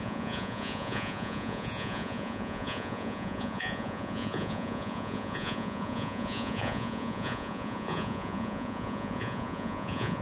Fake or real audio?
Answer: fake